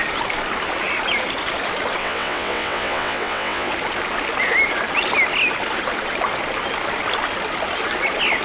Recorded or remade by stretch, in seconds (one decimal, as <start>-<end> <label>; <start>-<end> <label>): 0.0-2.0 recorded; 2.0-3.7 remade; 3.7-8.4 recorded